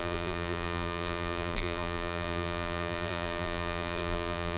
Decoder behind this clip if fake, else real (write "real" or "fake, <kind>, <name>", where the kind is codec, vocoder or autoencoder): fake, vocoder, BigVGAN v2